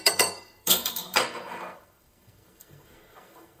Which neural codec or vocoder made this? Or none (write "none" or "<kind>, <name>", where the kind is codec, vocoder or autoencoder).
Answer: codec, SNAC